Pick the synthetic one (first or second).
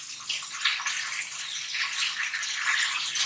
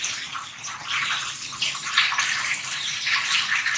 second